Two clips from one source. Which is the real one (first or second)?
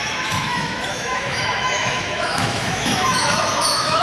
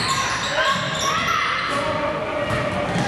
second